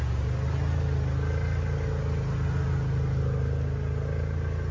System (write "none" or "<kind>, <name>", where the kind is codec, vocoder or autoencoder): none